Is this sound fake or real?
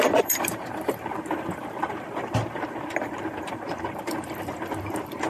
fake